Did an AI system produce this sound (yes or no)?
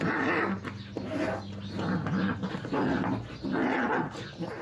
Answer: no